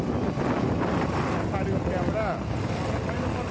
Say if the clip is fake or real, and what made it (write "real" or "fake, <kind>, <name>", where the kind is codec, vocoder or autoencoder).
real